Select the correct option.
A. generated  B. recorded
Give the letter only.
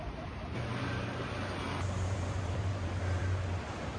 A